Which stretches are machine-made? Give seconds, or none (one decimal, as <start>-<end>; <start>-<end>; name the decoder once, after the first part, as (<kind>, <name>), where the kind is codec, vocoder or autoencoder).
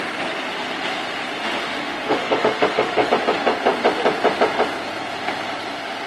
1.4-3.1 (autoencoder, DAC-VAE)